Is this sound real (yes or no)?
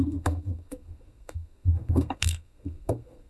no